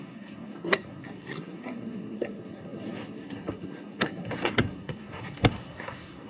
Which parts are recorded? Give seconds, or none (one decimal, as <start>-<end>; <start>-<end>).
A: none